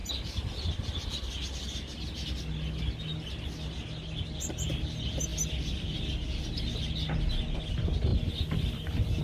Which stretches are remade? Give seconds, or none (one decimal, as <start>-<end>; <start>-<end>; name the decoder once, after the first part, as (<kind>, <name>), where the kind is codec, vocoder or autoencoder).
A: none